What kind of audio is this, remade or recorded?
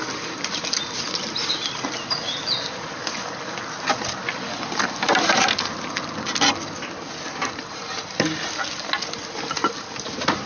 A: recorded